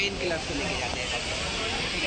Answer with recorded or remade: recorded